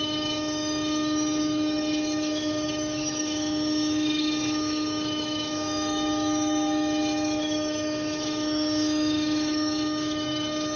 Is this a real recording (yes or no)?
no